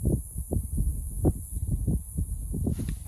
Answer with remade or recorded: recorded